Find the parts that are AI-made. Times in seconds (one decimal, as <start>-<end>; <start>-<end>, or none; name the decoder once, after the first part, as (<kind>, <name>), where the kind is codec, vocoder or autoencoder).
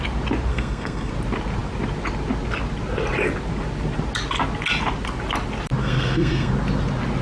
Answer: 0.5-1.1 (codec, SNAC); 5.8-6.5